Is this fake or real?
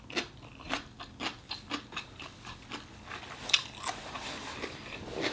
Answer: real